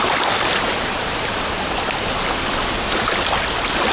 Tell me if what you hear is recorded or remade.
recorded